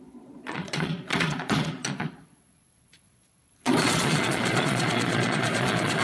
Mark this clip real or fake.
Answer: fake